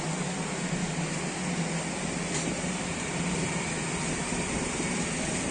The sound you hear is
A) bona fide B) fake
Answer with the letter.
A